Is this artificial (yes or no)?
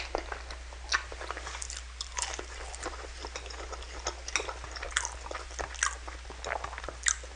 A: no